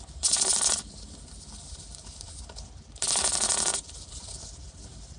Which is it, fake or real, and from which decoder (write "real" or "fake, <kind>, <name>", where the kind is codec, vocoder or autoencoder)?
fake, vocoder, BigVGAN v2